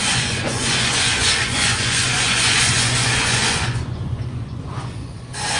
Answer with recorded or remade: remade